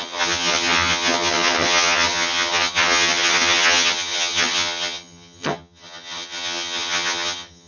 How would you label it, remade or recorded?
remade